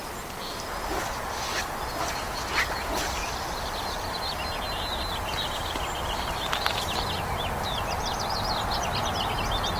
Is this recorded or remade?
recorded